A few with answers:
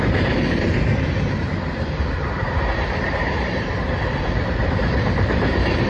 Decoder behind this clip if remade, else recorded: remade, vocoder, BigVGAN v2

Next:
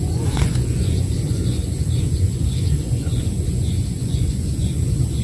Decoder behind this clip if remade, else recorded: remade, vocoder, Vocos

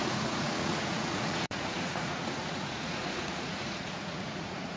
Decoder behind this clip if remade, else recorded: remade, vocoder, Vocos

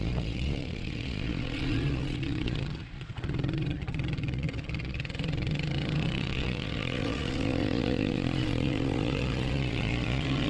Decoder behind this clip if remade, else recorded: remade, vocoder, Vocos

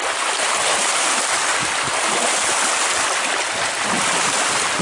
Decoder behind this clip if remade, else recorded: recorded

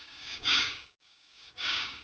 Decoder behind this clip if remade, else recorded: remade, codec, DAC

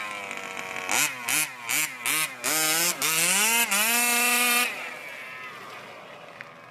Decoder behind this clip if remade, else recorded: recorded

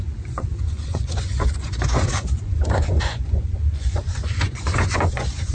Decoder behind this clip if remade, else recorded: remade, vocoder, Vocos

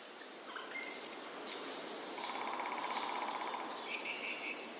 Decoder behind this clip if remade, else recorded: recorded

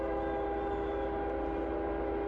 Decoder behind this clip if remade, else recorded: recorded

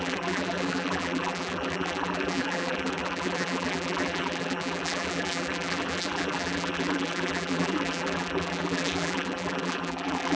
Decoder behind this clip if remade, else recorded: remade, vocoder, BigVGAN v2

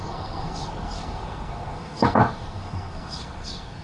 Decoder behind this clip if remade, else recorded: remade, codec, SNAC